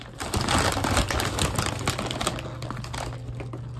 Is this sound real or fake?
real